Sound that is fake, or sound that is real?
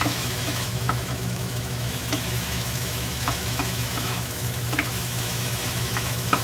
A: fake